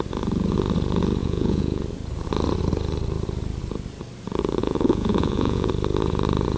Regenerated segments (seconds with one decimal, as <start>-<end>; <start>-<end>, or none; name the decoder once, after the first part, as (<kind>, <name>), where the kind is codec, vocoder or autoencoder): 1.2-1.8 (vocoder, Vocos); 4.6-5.7